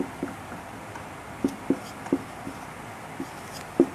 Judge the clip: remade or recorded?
recorded